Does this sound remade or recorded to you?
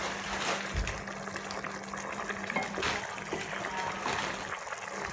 recorded